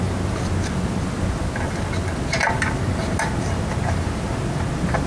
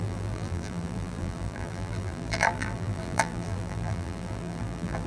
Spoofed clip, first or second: second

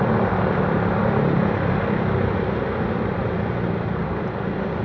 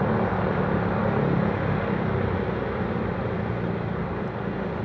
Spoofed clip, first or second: first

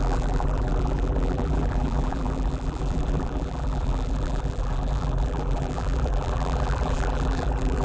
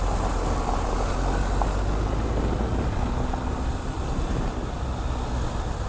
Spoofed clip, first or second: first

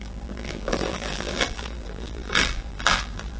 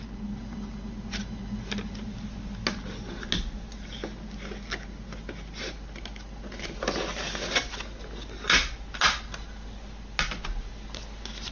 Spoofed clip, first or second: first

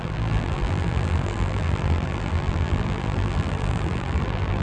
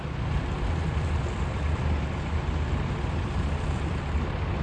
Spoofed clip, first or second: first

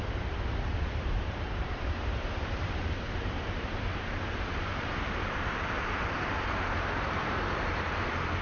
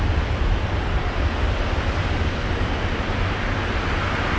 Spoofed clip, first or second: first